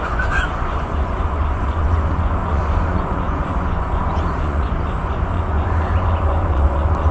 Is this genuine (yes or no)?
no